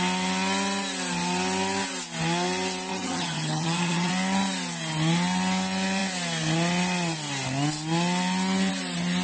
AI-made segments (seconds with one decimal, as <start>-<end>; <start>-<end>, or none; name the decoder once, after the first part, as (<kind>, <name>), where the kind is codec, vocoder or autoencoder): 2.9-4.1 (vocoder, HiFi-GAN)